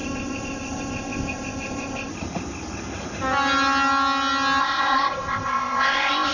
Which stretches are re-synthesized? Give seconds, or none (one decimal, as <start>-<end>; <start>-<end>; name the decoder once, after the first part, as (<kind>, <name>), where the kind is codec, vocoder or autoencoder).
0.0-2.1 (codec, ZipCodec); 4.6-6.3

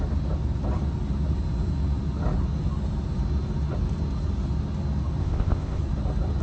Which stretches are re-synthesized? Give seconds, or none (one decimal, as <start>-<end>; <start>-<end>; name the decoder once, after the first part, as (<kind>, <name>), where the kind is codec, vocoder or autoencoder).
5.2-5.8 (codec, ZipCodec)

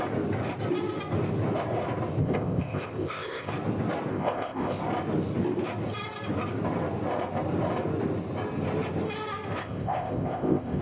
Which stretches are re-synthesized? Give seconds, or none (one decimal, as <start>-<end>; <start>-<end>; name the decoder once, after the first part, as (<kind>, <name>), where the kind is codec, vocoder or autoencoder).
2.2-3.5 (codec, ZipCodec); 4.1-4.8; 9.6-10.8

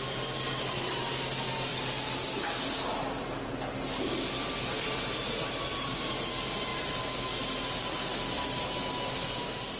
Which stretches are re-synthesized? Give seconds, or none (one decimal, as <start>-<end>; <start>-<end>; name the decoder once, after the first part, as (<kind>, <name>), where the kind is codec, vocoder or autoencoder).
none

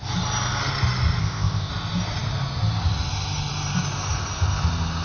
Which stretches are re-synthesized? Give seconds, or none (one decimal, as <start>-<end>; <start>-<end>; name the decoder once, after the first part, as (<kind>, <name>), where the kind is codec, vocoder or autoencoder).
1.2-1.7 (codec, ZipCodec)

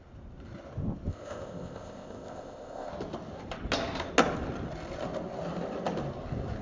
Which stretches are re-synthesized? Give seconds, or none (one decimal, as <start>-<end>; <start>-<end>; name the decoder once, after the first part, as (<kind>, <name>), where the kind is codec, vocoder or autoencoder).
1.1-2.9 (codec, ZipCodec)

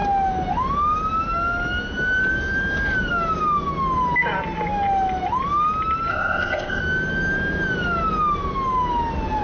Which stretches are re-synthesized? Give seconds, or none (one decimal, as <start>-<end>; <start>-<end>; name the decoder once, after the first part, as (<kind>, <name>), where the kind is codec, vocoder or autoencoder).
6.1-6.8 (codec, ZipCodec)

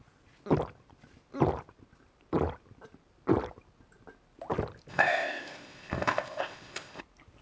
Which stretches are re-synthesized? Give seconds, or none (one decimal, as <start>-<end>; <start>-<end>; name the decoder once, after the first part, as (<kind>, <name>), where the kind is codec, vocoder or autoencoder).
4.9-7.0 (codec, ZipCodec)